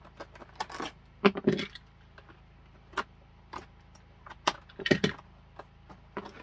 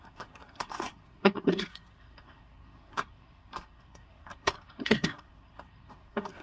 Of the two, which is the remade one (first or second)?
second